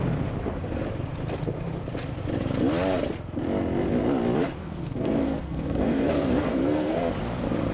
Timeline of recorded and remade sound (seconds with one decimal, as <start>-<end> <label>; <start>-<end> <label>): 0.0-4.6 recorded; 4.6-7.0 remade; 7.0-7.7 recorded